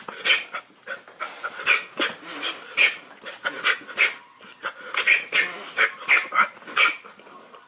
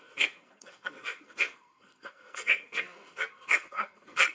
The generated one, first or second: second